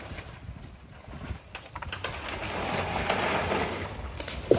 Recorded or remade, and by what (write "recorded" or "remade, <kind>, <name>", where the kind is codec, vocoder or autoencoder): recorded